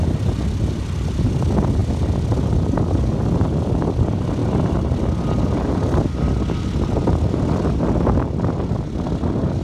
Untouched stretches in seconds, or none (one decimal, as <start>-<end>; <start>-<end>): 0.0-9.6